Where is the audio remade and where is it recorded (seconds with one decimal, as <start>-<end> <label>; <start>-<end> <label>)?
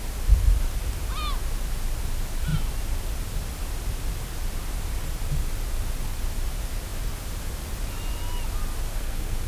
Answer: 0.0-8.9 recorded; 8.9-9.5 remade